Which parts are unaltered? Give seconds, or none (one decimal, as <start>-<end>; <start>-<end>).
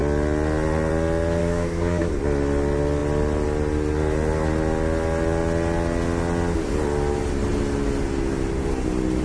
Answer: 0.0-1.4; 2.2-9.2